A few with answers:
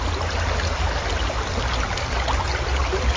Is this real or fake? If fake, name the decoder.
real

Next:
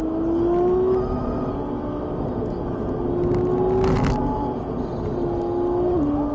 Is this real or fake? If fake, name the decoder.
real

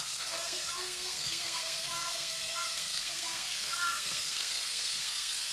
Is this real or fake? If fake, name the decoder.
fake, codec, SNAC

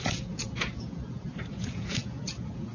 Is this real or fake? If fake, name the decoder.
fake, vocoder, Vocos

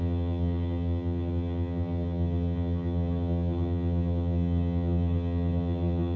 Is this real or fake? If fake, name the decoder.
fake, vocoder, HiFi-GAN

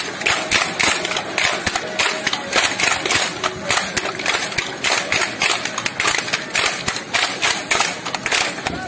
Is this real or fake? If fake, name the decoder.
real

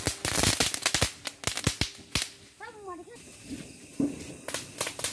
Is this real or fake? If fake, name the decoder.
real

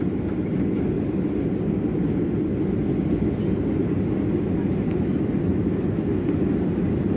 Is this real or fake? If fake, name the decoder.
real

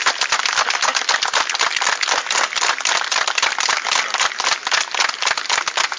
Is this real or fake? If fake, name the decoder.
real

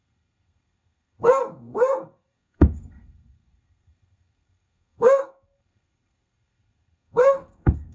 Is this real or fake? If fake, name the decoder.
fake, codec, SNAC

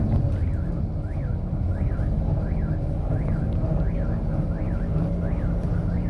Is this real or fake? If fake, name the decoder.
real